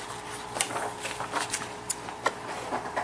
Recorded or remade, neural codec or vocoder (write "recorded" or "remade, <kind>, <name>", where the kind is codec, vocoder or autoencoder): recorded